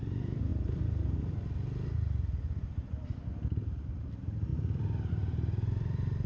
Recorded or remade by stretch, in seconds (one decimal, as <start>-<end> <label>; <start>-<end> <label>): 0.0-6.3 recorded